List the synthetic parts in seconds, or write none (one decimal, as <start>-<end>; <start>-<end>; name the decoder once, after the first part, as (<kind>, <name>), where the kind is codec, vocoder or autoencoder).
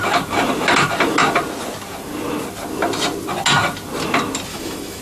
4.5-5.0 (autoencoder, DAC-VAE)